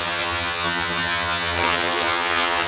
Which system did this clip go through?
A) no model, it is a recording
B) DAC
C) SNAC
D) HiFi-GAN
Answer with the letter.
D